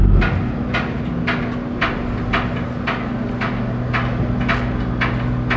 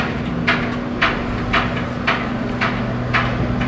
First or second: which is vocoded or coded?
second